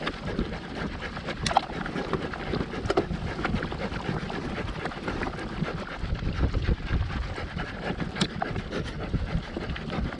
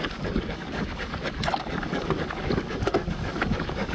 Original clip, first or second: first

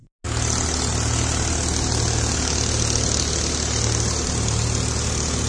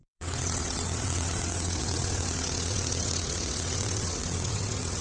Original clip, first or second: first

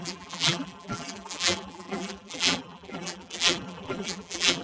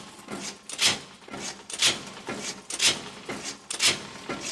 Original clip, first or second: second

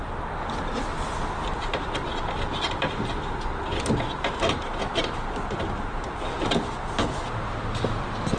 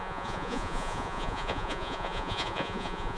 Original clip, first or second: first